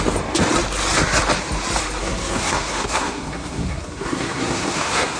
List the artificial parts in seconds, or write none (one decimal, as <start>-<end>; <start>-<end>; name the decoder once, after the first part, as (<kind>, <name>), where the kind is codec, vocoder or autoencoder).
2.0-5.2 (codec, SNAC)